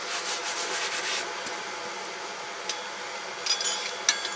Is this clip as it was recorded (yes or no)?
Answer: yes